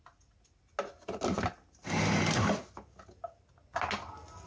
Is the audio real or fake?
real